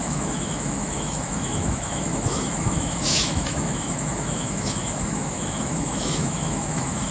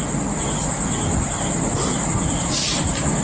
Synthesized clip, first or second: first